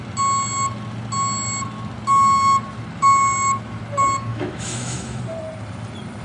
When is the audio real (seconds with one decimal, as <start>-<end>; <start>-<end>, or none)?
0.0-4.3; 5.2-6.2